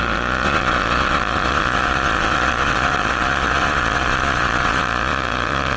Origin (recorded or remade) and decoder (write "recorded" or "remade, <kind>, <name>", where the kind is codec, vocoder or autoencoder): remade, vocoder, Vocos